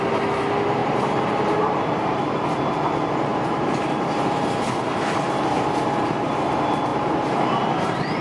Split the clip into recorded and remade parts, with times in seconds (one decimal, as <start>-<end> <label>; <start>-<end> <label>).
0.0-0.8 recorded; 0.8-2.2 remade; 2.2-3.3 recorded; 3.3-6.2 remade; 6.2-6.9 recorded; 6.9-8.2 remade